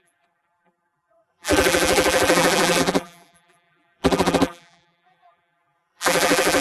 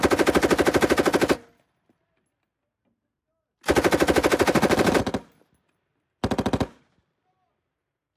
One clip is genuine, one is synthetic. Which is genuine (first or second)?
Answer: second